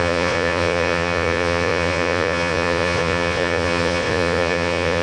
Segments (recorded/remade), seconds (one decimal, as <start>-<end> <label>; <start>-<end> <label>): 0.0-5.0 remade